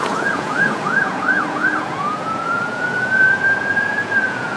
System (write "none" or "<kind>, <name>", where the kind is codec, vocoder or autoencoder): vocoder, Vocos